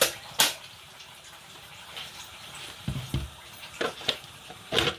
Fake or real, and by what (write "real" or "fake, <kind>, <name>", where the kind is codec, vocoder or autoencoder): fake, vocoder, BigVGAN v2